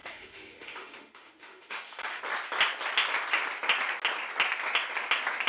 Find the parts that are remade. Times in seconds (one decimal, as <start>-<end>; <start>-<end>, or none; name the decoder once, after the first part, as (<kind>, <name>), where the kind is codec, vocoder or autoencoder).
0.0-2.2 (autoencoder, DAC-VAE)